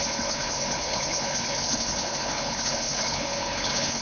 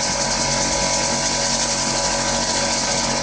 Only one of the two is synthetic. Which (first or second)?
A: first